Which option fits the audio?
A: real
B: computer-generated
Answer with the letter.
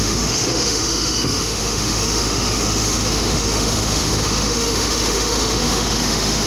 B